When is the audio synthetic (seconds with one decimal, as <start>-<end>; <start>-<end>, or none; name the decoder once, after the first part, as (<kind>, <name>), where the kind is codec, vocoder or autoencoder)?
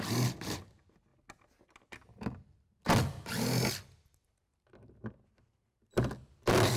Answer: none